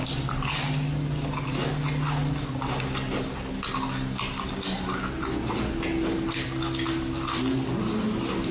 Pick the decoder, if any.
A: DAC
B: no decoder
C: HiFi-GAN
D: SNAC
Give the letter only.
B